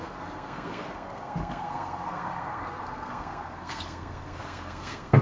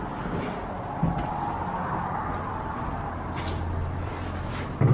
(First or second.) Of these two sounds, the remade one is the first